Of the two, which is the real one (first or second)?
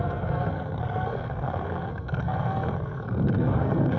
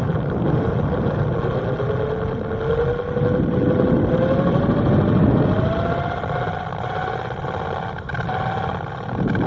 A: second